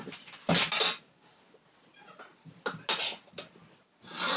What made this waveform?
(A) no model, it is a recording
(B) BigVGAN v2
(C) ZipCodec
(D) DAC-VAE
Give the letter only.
A